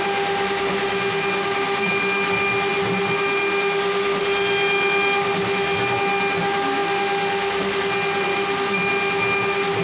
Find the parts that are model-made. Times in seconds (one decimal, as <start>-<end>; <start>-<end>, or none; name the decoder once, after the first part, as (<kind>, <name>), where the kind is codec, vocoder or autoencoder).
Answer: none